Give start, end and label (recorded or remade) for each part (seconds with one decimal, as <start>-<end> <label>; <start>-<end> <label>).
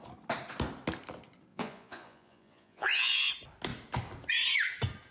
0.0-1.5 recorded; 1.5-3.3 remade; 3.3-5.1 recorded